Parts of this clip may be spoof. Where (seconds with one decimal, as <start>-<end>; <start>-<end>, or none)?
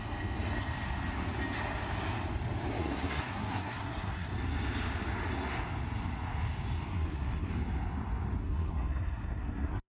2.7-4.3; 6.9-7.5; 8.4-9.9